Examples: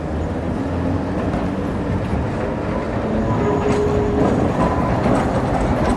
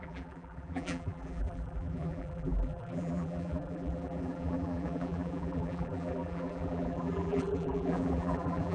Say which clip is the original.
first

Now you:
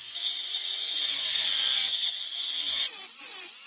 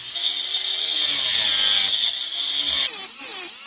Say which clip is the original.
second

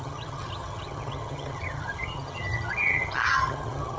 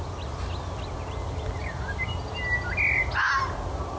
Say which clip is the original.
second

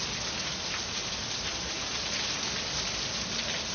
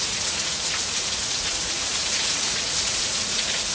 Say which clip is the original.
first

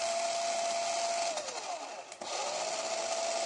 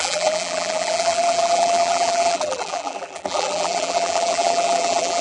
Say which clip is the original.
first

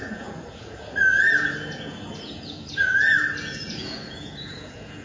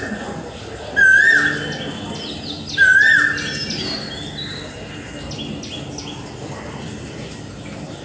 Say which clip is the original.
second